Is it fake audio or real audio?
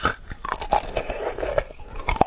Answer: real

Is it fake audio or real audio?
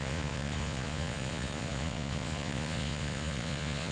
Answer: fake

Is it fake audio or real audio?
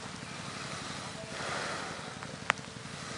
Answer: real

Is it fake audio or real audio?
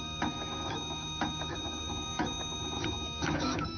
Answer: fake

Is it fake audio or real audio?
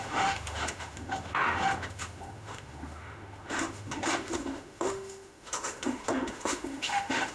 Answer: fake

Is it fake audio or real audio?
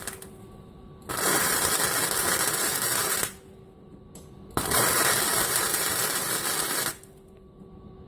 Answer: real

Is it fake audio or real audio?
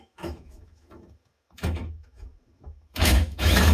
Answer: fake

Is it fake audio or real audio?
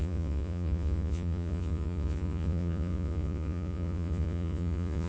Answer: fake